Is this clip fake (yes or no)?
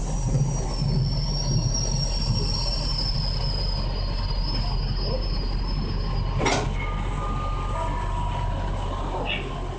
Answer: no